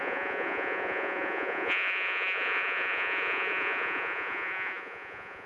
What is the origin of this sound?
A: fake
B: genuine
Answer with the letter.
A